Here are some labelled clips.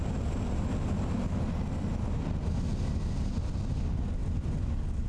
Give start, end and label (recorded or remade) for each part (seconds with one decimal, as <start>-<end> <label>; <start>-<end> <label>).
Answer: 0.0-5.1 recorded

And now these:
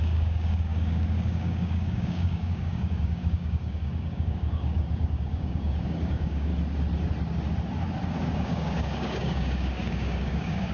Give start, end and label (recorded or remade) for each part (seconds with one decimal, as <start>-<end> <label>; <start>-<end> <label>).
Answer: 0.0-6.5 remade; 6.5-8.3 recorded; 8.3-10.7 remade

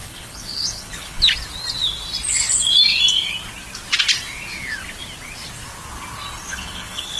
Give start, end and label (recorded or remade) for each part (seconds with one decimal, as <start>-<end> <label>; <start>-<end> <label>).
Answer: 0.0-1.2 remade; 1.2-6.5 recorded; 6.5-7.2 remade

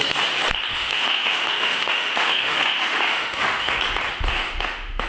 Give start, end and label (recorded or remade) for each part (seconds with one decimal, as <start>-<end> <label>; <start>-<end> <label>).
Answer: 0.0-0.7 recorded; 0.7-3.8 remade; 3.8-4.3 recorded; 4.3-5.1 remade

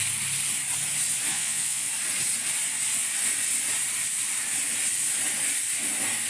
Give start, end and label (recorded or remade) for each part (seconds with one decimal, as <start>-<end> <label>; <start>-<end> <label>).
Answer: 0.0-1.3 recorded; 1.3-1.9 remade; 1.9-6.3 recorded

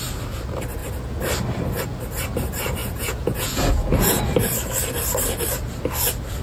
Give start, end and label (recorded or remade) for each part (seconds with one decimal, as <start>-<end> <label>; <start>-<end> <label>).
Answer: 0.0-2.8 recorded; 2.8-4.2 remade; 4.2-6.4 recorded

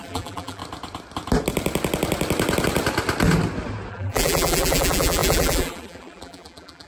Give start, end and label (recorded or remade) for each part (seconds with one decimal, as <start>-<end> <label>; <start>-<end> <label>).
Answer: 0.0-0.6 remade; 0.6-3.9 recorded; 3.9-6.9 remade